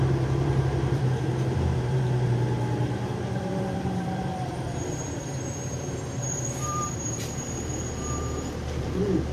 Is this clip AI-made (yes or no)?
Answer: yes